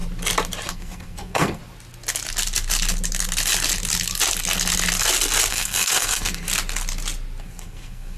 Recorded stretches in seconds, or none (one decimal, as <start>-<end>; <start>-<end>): 0.0-0.7; 1.6-5.5; 6.5-7.4